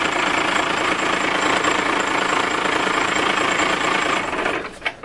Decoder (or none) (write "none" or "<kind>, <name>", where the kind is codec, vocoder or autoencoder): none